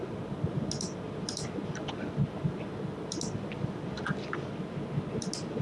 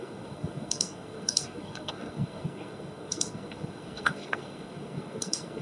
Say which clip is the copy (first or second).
second